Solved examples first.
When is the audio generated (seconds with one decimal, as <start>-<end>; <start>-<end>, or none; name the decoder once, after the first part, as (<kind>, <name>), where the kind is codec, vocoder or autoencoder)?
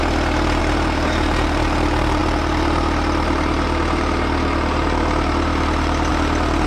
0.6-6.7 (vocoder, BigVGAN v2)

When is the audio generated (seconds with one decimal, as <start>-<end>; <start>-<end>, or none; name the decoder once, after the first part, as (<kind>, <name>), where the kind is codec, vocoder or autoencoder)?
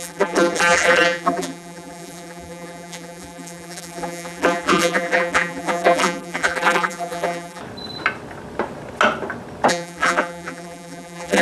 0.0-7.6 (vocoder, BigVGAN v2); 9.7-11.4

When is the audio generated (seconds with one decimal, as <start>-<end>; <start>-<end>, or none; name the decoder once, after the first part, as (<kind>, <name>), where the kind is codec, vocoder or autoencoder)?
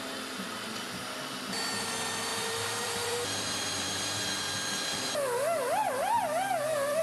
2.3-4.3 (vocoder, BigVGAN v2)